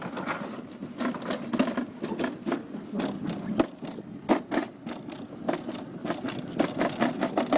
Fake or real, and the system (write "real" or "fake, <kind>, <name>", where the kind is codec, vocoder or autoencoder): real